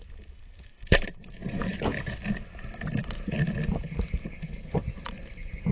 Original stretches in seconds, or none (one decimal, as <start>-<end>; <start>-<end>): 0.0-0.7; 2.1-5.7